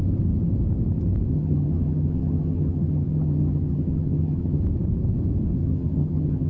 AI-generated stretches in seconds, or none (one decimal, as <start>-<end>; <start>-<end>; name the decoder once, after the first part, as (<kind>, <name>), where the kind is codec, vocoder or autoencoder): 1.3-4.6 (vocoder, HiFi-GAN); 5.6-6.5